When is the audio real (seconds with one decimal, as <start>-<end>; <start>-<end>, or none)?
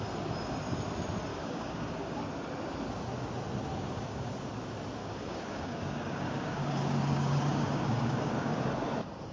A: 0.0-1.3; 2.2-3.7; 4.3-5.0; 8.7-9.3